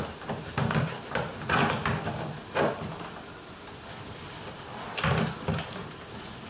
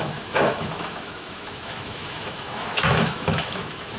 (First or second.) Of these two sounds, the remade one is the second